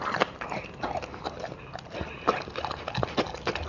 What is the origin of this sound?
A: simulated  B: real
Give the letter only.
B